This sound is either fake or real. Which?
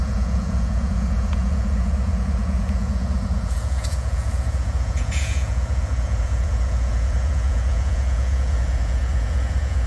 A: fake